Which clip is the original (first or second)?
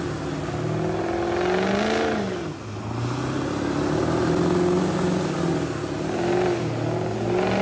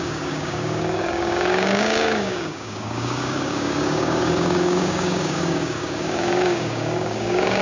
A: first